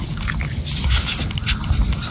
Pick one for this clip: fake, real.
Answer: real